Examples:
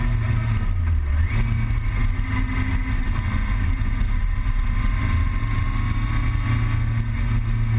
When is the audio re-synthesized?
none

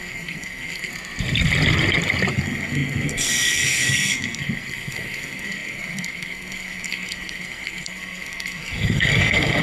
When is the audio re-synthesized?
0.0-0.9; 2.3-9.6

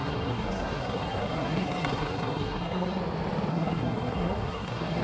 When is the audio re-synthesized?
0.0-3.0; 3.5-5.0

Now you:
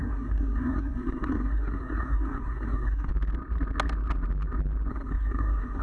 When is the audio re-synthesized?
0.0-3.1; 4.9-5.8